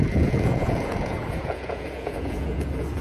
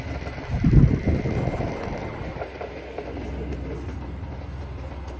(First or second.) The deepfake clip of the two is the first